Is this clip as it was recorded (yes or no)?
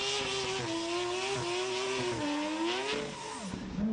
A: yes